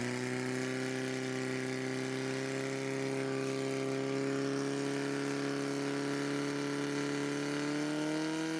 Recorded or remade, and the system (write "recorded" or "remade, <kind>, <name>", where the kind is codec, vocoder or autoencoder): recorded